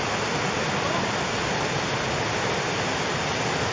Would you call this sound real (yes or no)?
yes